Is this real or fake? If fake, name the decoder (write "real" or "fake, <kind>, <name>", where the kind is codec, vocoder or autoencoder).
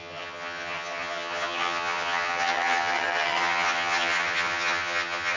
fake, vocoder, HiFi-GAN